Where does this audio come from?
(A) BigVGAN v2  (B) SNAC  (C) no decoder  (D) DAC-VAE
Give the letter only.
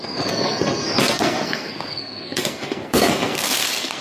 B